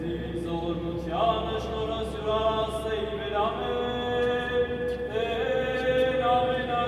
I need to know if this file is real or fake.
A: real